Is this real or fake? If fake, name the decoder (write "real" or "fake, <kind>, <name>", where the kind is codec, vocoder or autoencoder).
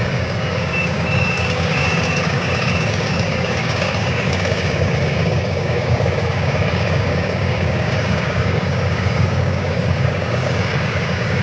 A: fake, codec, DAC